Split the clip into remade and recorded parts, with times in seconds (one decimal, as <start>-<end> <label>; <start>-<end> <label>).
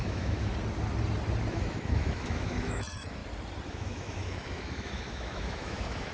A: 0.0-0.5 remade; 0.5-1.5 recorded; 1.5-3.2 remade; 3.2-3.7 recorded; 3.7-6.1 remade